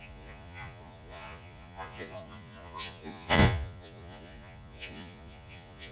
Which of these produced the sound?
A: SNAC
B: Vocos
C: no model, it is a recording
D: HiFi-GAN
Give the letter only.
B